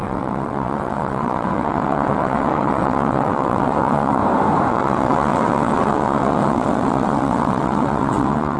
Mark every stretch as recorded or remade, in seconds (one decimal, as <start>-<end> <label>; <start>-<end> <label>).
0.0-4.2 remade; 4.2-4.7 recorded; 4.7-8.6 remade